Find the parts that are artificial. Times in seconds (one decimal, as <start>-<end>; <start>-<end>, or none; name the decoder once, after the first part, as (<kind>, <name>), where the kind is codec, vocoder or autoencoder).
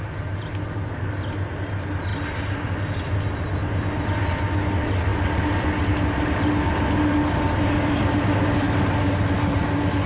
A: none